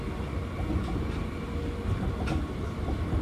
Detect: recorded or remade recorded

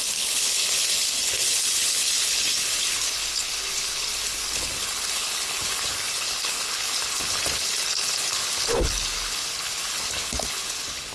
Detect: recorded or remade remade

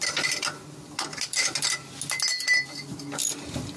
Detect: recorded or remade recorded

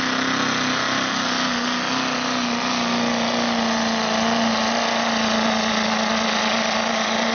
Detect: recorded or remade recorded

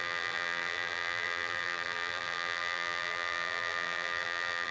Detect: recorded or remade remade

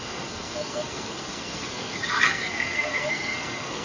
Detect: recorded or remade remade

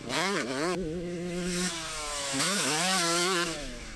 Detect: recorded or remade remade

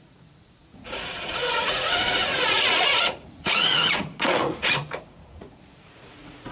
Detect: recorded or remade remade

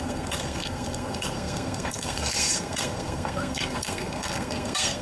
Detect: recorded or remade remade